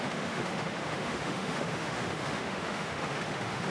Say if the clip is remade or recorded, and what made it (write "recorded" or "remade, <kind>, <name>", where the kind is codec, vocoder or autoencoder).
remade, autoencoder, DAC-VAE